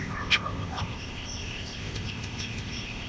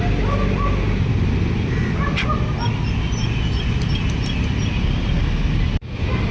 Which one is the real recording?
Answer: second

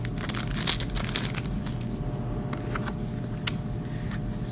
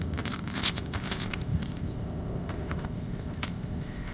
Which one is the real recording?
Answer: first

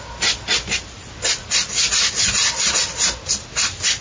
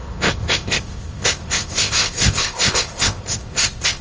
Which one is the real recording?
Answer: first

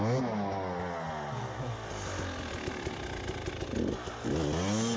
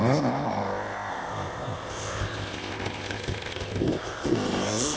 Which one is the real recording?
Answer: first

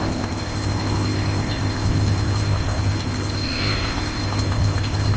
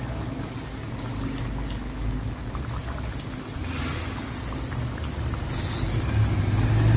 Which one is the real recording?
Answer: second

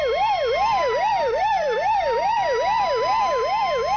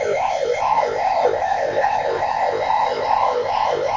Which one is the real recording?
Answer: first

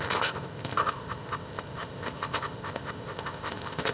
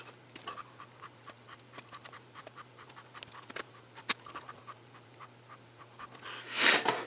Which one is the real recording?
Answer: second